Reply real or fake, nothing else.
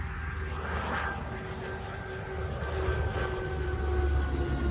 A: real